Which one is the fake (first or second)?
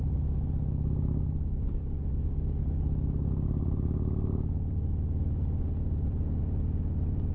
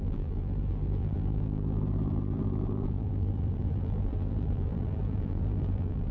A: second